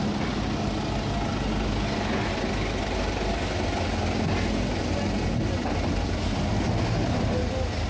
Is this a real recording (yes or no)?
yes